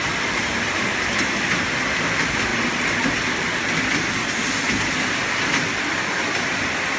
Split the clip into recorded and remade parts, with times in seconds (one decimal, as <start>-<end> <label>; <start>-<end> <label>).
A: 0.0-0.9 recorded; 0.9-1.7 remade; 1.7-7.0 recorded